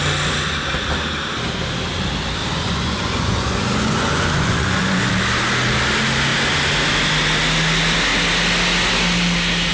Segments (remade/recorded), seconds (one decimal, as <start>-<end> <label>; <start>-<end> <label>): 0.0-2.4 recorded; 2.4-5.1 remade; 5.1-9.7 recorded